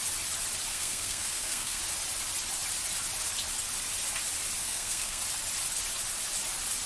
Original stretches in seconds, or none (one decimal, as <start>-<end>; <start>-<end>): 0.0-0.7; 1.8-4.6; 5.2-6.9